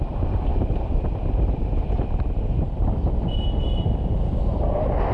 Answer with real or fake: real